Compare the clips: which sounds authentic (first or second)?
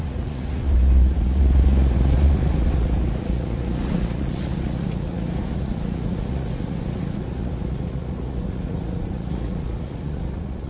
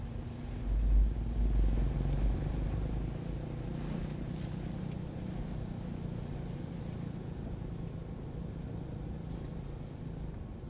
second